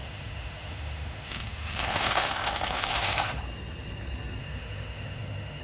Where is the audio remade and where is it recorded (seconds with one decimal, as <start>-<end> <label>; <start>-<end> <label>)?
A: 0.0-3.4 remade; 3.4-4.4 recorded; 4.4-5.6 remade